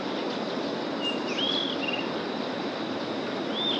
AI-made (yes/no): no